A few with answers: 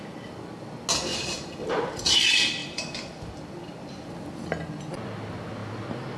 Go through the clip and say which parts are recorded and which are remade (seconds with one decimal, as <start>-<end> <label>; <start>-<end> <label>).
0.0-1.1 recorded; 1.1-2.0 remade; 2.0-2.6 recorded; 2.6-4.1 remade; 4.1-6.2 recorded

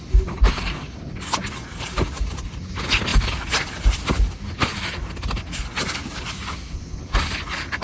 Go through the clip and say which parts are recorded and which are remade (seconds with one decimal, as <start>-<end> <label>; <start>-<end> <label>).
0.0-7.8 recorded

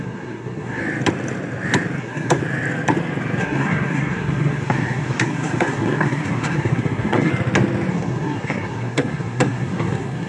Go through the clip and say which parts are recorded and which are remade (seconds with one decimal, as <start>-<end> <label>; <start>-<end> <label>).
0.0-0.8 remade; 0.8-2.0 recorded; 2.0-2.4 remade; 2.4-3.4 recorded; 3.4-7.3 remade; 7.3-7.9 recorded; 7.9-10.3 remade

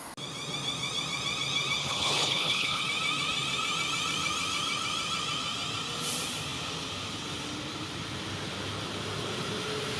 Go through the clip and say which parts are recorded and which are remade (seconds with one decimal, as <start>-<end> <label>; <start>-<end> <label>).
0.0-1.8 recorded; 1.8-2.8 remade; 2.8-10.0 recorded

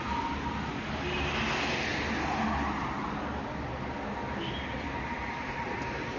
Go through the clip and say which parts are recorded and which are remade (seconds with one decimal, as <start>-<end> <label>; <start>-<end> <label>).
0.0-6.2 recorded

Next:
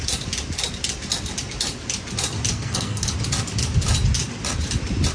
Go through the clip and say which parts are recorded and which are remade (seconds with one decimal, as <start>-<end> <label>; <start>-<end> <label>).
0.0-2.5 recorded; 2.5-3.1 remade; 3.1-5.1 recorded

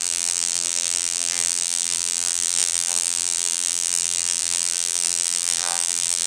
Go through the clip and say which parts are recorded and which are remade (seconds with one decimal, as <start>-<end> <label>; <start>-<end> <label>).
0.0-6.3 remade